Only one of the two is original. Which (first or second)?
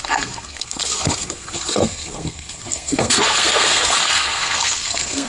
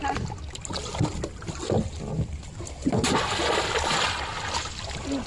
second